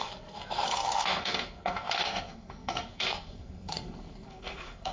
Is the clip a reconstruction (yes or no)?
yes